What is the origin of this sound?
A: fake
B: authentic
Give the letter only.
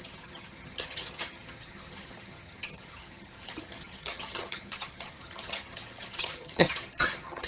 A